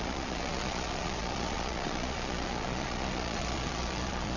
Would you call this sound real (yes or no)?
no